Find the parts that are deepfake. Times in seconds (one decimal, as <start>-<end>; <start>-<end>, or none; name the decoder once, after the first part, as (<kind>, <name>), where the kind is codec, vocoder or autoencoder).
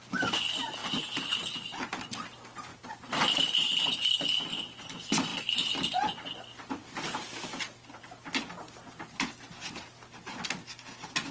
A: 0.8-1.4 (vocoder, BigVGAN v2); 2.7-4.1